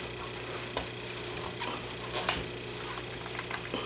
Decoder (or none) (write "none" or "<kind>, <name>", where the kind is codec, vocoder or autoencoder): none